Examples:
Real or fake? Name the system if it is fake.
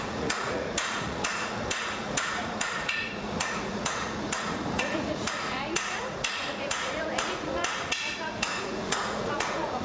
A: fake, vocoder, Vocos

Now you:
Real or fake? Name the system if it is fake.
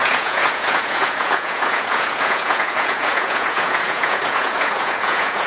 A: fake, vocoder, Vocos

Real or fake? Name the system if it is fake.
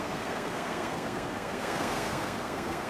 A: fake, codec, SNAC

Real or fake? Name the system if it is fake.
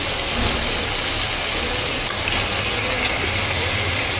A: real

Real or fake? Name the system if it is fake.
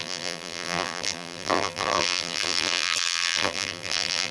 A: fake, vocoder, BigVGAN v2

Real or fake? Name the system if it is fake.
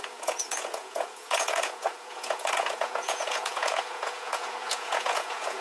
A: fake, vocoder, Vocos